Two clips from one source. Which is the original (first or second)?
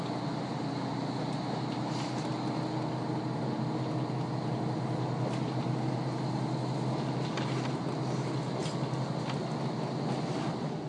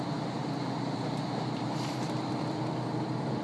first